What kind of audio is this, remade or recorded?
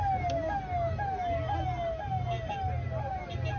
recorded